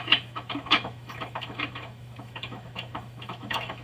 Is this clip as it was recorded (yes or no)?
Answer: no